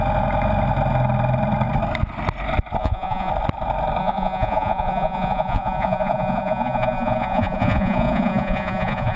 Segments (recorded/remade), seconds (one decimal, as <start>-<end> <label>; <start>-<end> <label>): 0.0-2.8 recorded; 2.8-3.3 remade; 3.3-4.0 recorded; 4.0-9.2 remade